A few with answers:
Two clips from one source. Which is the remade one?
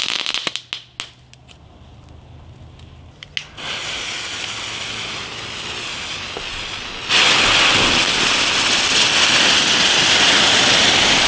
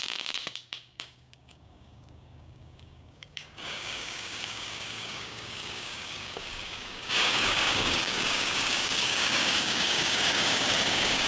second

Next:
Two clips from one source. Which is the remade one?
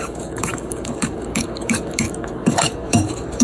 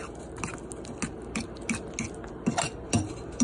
first